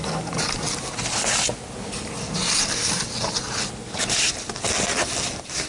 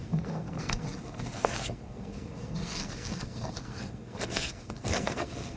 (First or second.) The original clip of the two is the first